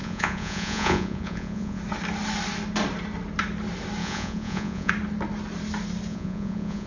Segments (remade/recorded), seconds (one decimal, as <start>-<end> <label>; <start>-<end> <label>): 0.0-1.8 remade; 1.8-4.0 recorded; 4.0-4.9 remade; 4.9-6.1 recorded; 6.1-6.9 remade